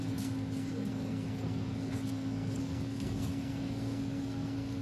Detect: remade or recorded remade